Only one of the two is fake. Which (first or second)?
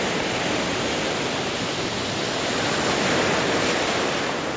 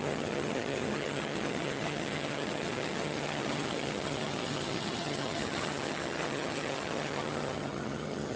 second